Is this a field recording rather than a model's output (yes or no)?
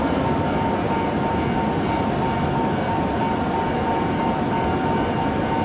yes